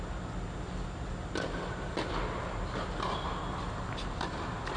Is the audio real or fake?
real